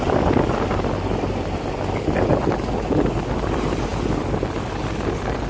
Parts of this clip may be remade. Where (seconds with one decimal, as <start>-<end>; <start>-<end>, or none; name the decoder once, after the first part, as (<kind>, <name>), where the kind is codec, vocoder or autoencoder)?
none